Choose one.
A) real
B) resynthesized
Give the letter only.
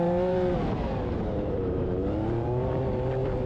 B